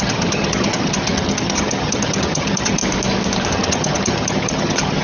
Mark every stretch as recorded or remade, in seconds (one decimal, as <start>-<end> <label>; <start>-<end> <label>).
0.0-2.8 remade; 2.8-3.5 recorded; 3.5-5.0 remade